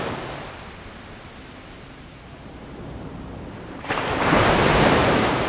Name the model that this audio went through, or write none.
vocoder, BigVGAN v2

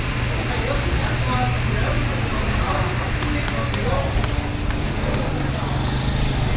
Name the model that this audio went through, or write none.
none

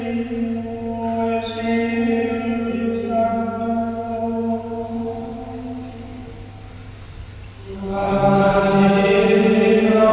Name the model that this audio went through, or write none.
none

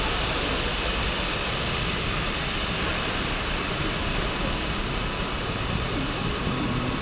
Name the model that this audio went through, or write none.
none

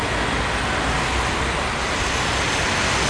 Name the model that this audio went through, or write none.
none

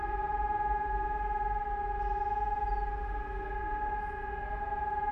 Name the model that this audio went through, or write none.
none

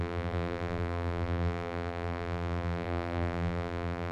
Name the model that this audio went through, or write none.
vocoder, BigVGAN v2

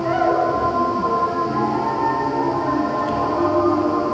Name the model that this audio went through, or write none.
none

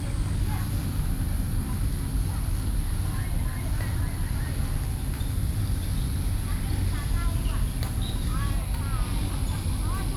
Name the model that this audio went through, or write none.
none